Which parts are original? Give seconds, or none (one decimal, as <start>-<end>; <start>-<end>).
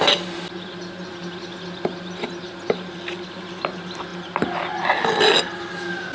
0.0-6.1